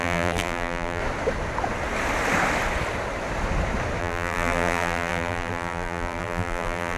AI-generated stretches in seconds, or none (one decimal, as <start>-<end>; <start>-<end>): 0.0-1.0; 4.0-7.0